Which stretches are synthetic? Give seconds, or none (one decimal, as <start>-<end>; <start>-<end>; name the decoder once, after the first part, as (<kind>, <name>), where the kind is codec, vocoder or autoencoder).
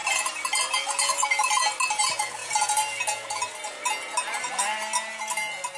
none